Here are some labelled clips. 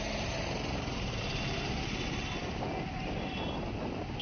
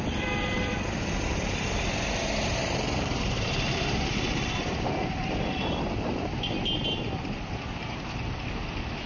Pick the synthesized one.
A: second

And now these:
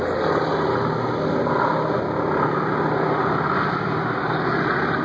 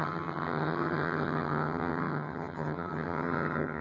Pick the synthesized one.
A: second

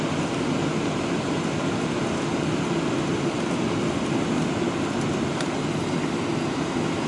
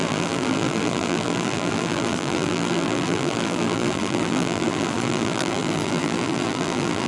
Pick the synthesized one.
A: second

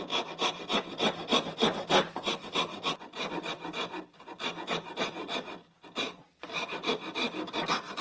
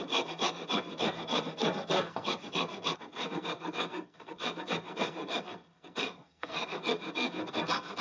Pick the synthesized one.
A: second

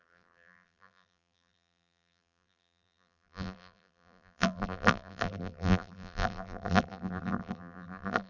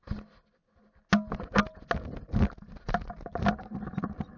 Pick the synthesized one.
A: first